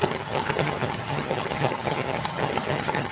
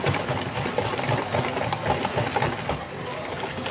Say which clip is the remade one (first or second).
first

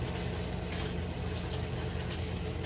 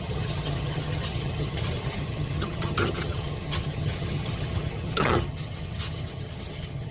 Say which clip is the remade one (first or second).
second